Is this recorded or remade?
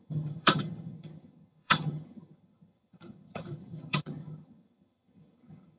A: remade